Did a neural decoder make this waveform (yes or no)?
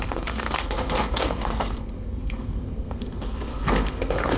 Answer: yes